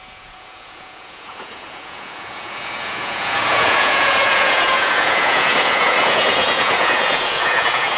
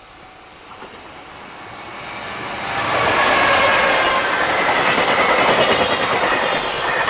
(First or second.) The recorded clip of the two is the second